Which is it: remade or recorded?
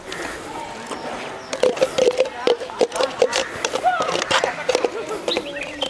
recorded